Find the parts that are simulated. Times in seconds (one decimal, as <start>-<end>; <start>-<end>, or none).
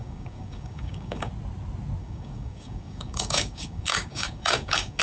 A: 0.0-1.3; 2.0-5.0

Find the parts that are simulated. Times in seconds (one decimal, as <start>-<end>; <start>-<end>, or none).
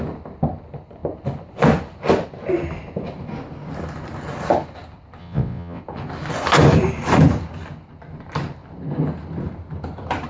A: 5.2-5.8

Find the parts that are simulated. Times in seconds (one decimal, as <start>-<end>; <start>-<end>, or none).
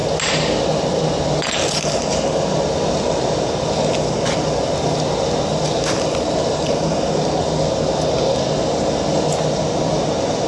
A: 6.4-7.0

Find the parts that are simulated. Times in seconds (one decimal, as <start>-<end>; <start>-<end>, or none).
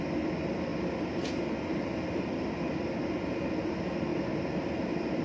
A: 0.0-4.1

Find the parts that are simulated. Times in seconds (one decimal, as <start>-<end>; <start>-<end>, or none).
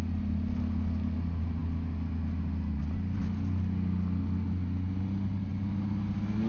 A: none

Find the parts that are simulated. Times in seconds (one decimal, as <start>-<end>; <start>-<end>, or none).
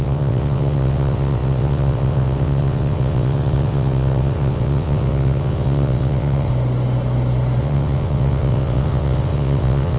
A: 0.0-6.5; 7.6-10.0